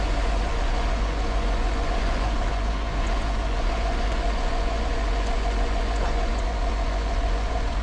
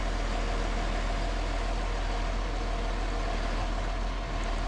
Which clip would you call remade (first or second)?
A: first